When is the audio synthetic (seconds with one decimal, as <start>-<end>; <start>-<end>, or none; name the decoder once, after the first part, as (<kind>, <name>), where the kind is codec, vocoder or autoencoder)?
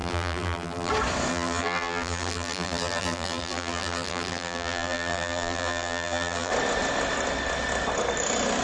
0.0-0.9 (vocoder, BigVGAN v2); 1.3-6.5